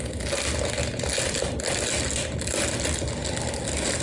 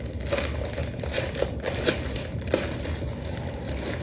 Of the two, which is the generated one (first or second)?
second